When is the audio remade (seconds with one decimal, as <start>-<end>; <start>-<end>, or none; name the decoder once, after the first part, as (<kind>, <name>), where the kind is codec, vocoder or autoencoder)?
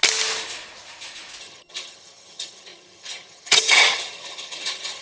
1.4-5.0 (vocoder, HiFi-GAN)